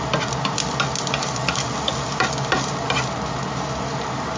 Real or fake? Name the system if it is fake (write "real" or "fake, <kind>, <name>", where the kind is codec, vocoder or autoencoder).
real